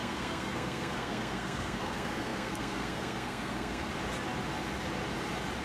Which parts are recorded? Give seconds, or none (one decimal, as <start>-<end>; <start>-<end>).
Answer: 3.9-5.6